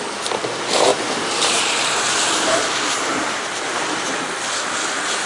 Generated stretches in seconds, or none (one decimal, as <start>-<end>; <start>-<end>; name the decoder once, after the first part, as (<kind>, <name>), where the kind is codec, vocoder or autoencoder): 0.9-4.1 (vocoder, BigVGAN v2)